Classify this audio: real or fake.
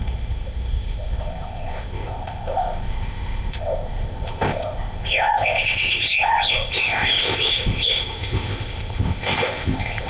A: fake